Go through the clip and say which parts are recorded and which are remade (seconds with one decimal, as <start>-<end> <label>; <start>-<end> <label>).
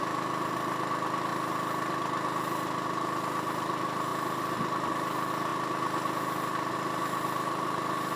0.0-8.2 recorded